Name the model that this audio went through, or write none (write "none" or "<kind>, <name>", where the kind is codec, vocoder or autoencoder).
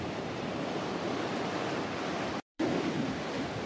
vocoder, BigVGAN v2